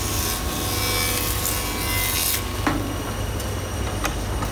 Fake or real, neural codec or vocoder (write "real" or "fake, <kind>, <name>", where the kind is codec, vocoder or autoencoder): real